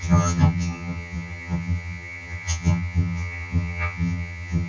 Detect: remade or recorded remade